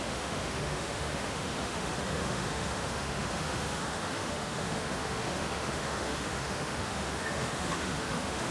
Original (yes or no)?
no